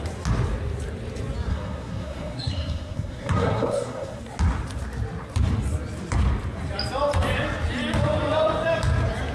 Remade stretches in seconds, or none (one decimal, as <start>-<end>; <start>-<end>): 1.5-4.2